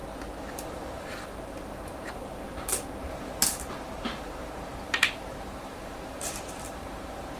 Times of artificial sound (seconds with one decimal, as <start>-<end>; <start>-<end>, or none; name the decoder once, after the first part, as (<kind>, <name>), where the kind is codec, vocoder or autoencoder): 0.5-7.4 (vocoder, BigVGAN v2)